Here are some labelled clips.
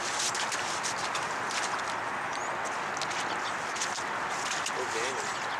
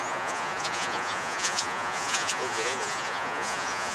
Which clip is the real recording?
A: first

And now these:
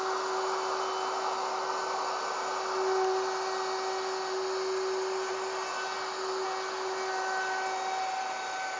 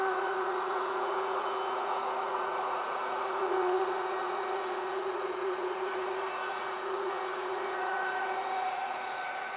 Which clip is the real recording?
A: first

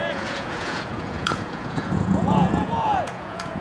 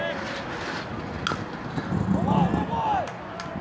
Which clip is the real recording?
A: second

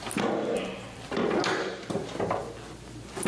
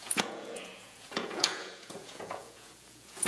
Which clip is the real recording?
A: first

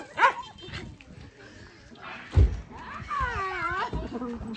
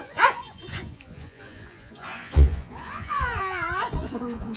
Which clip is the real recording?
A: first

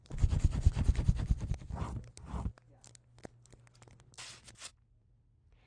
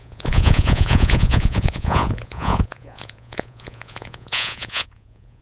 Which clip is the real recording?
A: first